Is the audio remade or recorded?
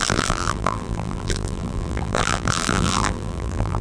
remade